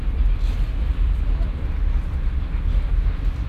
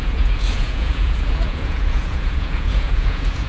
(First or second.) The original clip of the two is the first